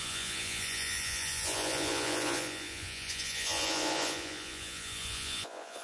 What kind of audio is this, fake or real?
fake